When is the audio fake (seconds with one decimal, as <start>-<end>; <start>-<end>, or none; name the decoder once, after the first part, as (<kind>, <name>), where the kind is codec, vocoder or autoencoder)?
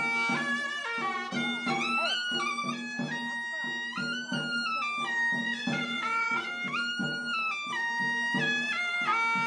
5.4-6.5 (vocoder, Vocos)